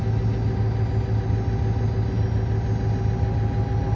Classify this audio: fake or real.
real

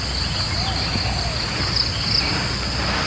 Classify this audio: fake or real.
real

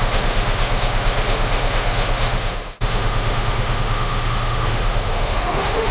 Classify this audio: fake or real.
fake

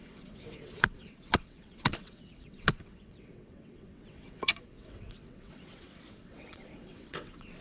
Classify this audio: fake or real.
fake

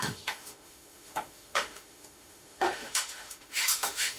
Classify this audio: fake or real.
fake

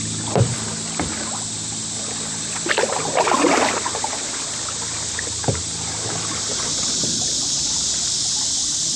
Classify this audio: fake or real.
real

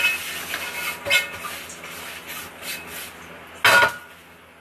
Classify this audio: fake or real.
real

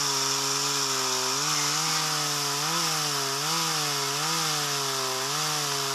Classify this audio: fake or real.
real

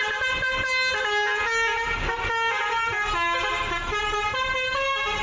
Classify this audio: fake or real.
real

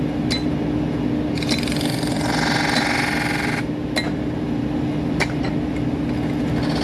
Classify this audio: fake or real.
real